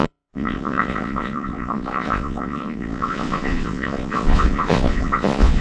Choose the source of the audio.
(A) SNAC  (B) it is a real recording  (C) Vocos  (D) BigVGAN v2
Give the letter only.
C